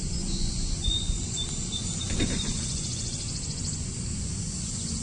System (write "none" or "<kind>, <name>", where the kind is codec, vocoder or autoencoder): vocoder, Vocos